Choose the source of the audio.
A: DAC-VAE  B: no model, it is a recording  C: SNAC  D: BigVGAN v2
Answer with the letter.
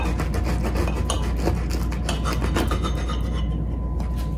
B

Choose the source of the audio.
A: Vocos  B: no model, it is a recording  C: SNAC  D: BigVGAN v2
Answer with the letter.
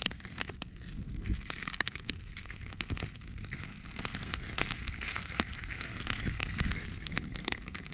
C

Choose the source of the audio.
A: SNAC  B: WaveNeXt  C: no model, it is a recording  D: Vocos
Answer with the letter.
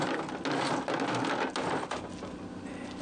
C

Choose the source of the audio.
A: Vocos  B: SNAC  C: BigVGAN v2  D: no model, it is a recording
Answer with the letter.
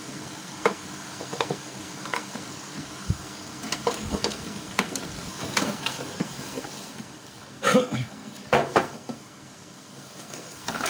B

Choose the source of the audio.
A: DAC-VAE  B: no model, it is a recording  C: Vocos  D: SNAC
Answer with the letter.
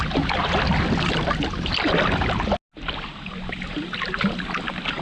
B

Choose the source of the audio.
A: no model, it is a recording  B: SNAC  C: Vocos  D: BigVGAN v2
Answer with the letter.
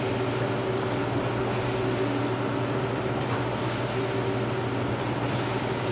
A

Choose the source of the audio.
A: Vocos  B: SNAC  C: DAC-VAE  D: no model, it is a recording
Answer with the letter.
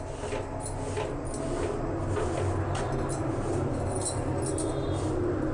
D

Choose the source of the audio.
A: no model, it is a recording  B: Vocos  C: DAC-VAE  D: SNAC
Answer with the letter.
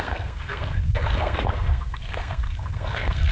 D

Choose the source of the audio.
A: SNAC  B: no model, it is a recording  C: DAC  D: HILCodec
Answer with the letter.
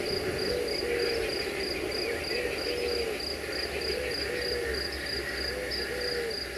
B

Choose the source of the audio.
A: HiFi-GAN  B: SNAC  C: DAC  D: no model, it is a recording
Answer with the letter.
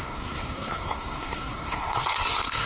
B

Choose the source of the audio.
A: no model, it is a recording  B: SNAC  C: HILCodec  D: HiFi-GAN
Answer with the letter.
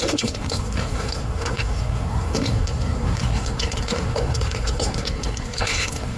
B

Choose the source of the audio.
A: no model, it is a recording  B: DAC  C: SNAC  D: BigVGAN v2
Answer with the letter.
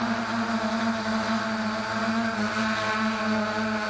A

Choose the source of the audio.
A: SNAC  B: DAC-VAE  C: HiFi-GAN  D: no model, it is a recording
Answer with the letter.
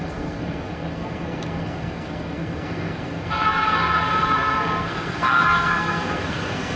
A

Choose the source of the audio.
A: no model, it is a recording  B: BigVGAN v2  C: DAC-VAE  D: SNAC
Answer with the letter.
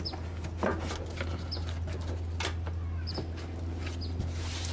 A